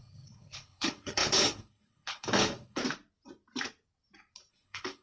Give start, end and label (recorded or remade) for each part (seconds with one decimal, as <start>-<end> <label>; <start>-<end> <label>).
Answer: 0.0-2.8 remade; 2.8-4.5 recorded; 4.5-5.0 remade